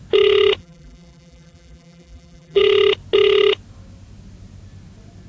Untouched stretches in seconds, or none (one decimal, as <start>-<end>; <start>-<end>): 0.0-0.6; 2.6-5.3